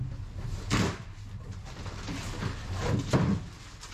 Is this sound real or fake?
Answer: real